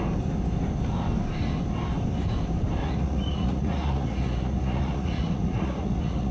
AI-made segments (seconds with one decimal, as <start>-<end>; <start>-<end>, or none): 2.8-6.3